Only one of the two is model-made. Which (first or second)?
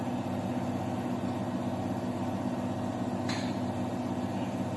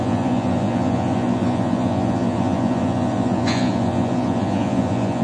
second